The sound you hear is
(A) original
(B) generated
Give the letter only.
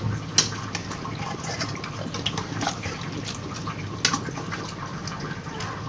A